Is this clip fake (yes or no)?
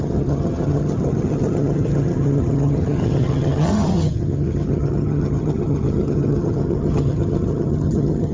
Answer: yes